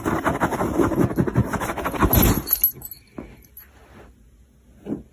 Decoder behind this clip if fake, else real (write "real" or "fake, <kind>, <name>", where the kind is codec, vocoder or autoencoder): real